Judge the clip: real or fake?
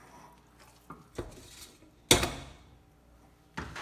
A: real